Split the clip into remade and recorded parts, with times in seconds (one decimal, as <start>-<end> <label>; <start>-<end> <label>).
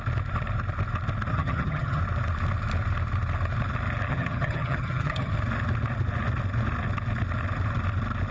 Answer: 0.0-1.3 recorded; 1.3-2.0 remade; 2.0-4.1 recorded; 4.1-5.3 remade; 5.3-8.3 recorded